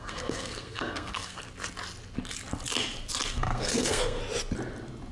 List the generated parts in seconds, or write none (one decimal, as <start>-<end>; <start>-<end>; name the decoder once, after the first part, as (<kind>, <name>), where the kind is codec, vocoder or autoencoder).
0.0-1.4 (codec, SNAC); 3.3-4.2